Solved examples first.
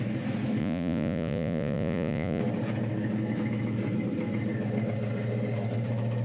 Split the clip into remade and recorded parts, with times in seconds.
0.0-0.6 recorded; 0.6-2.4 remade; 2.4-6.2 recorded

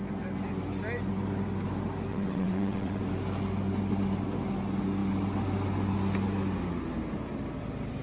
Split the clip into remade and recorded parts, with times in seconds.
0.0-2.1 recorded; 2.1-3.0 remade; 3.0-8.0 recorded

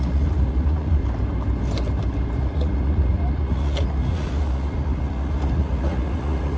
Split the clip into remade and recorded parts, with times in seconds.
0.0-1.0 remade; 1.0-2.4 recorded; 2.4-6.6 remade

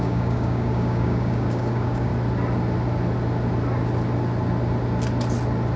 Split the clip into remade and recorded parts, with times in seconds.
0.0-2.1 remade; 2.1-5.8 recorded